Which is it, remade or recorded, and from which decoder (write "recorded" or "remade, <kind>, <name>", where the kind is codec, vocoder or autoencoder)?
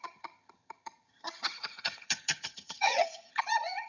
remade, vocoder, HiFi-GAN